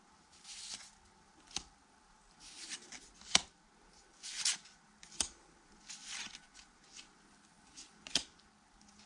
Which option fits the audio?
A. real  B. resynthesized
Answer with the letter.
A